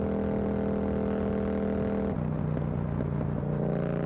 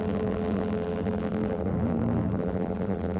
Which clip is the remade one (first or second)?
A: second